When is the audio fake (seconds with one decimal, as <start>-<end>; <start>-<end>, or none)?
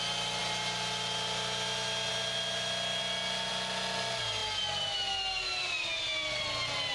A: none